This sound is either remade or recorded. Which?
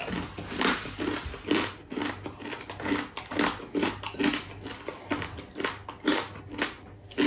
recorded